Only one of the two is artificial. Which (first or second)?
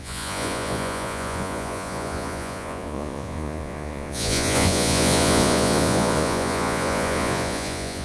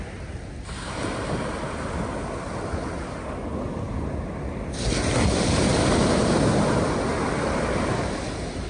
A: first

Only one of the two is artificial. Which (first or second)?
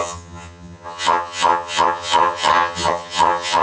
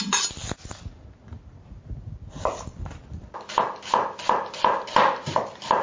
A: first